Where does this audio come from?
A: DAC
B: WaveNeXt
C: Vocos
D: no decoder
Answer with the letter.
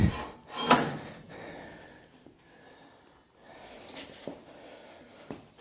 D